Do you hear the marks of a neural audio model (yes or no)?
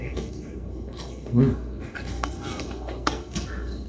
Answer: yes